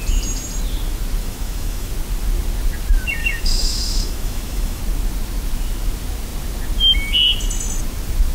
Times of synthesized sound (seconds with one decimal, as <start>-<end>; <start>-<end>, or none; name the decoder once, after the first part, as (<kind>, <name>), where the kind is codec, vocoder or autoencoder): 1.2-1.9 (autoencoder, DAC-VAE); 3.2-4.8